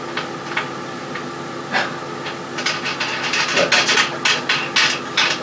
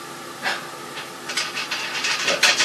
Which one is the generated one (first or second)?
second